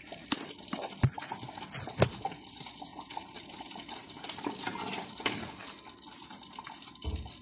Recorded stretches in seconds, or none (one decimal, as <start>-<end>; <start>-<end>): 0.0-2.9; 3.4-4.0; 5.5-7.4